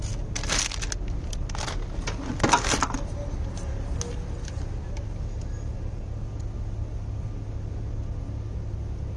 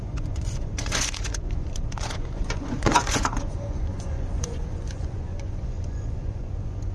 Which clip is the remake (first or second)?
second